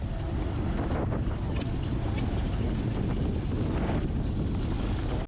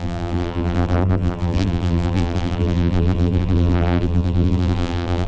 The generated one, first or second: second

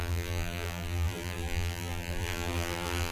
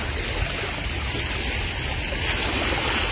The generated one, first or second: first